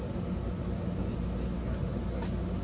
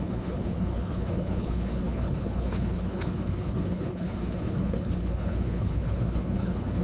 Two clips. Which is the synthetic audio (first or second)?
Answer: second